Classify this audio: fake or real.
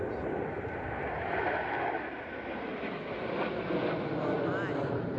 real